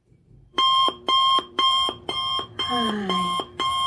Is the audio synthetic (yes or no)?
yes